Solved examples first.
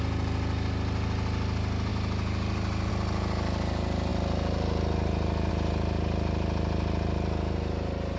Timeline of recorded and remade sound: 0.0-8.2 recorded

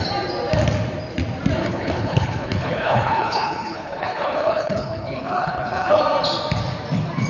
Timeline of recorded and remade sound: 0.0-1.6 recorded; 1.6-6.0 remade; 6.0-7.3 recorded

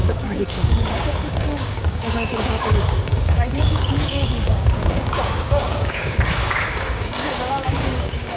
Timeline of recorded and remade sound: 0.0-8.4 remade

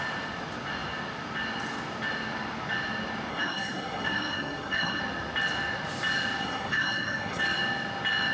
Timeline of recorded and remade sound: 0.0-3.3 recorded; 3.3-5.0 remade; 5.0-6.4 recorded; 6.4-7.4 remade; 7.4-8.3 recorded

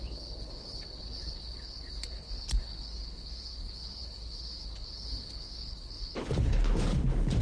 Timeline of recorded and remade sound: 0.0-7.4 remade

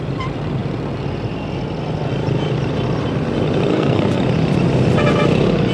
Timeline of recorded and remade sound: 0.0-3.7 recorded; 3.7-4.2 remade; 4.2-5.7 recorded